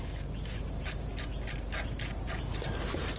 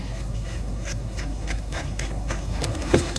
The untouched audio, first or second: first